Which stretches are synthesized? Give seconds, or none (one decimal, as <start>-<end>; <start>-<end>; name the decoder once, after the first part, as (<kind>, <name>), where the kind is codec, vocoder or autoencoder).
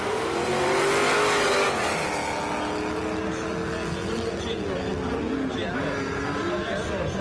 none